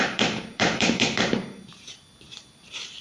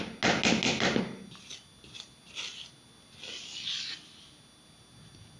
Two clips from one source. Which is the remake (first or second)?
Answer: first